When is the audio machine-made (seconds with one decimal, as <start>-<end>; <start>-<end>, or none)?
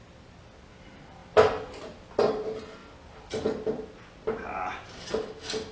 none